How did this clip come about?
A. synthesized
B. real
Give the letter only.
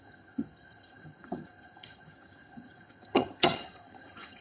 A